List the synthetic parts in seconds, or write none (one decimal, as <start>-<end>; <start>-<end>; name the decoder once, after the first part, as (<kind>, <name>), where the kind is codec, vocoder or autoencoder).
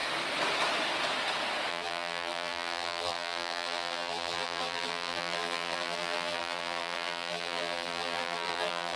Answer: 1.7-9.0 (vocoder, BigVGAN v2)